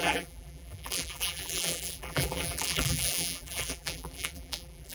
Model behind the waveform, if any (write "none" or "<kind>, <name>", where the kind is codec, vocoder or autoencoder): vocoder, BigVGAN v2